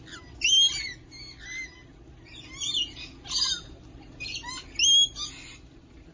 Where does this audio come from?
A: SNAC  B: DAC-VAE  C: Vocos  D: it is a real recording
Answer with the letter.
D